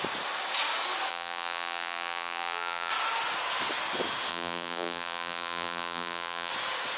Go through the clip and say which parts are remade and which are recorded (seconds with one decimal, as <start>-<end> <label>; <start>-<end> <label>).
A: 0.0-1.1 recorded; 1.1-2.9 remade; 2.9-4.3 recorded; 4.3-6.5 remade; 6.5-7.0 recorded